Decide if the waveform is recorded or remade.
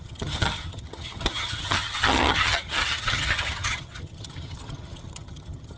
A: remade